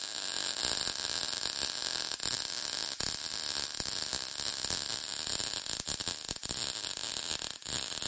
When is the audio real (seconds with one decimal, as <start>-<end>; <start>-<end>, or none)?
0.0-0.4; 5.3-8.1